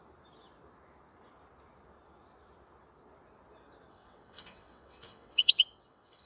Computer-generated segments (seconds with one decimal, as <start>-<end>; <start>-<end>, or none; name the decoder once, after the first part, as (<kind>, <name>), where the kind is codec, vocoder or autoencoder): 3.9-6.3 (vocoder, WaveNeXt)